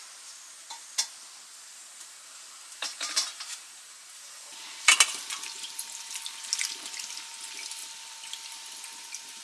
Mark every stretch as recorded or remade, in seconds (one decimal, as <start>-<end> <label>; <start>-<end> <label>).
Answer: 0.0-1.7 recorded; 1.7-5.2 remade; 5.2-9.4 recorded